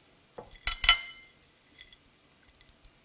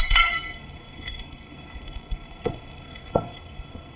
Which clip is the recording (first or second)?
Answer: first